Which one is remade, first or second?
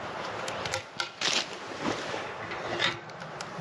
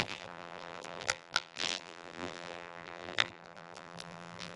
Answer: second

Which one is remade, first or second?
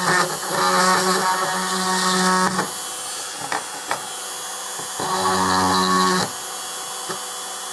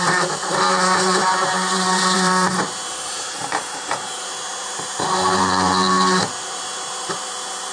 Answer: second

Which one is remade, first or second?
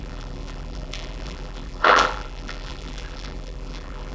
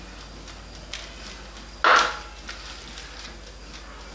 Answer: first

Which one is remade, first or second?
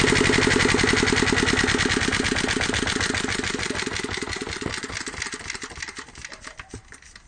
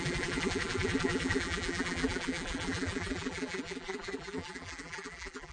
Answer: second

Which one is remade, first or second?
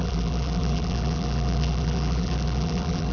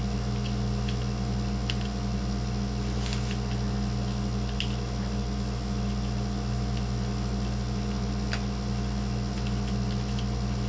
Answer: first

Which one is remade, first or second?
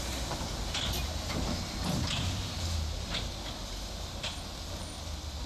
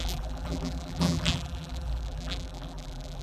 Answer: second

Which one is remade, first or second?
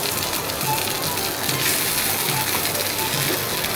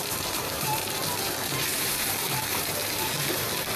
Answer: second